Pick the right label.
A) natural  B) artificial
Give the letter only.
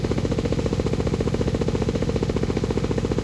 B